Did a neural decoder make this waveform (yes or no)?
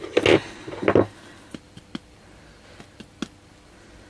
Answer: no